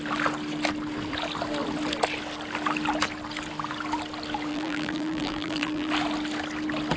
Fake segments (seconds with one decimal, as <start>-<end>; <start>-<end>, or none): 4.5-5.9